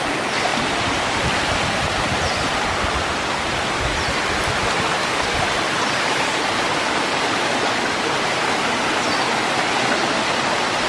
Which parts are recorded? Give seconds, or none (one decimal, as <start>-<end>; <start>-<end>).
0.0-0.5; 3.7-4.9; 9.2-10.9